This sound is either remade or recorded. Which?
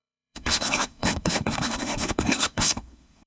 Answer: remade